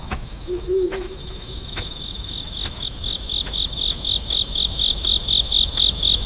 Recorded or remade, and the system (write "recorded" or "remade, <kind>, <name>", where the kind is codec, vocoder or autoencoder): remade, autoencoder, DAC-VAE